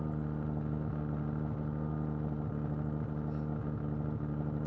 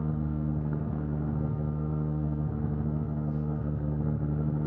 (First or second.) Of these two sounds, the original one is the first